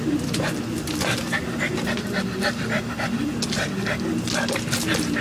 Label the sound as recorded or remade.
recorded